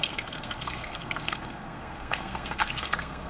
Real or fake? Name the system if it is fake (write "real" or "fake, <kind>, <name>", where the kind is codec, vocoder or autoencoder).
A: fake, codec, SNAC